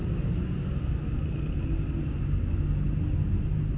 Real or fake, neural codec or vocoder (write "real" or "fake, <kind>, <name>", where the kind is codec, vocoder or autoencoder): real